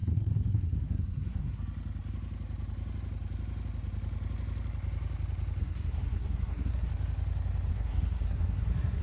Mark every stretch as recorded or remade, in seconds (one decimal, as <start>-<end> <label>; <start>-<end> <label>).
0.0-1.6 remade; 1.6-5.6 recorded; 5.6-6.9 remade; 6.9-7.7 recorded; 7.7-9.0 remade